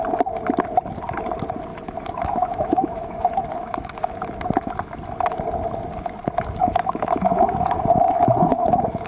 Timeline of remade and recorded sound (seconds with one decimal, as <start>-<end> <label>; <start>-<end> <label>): 0.0-1.7 recorded; 1.7-4.1 remade; 4.1-6.6 recorded; 6.6-9.1 remade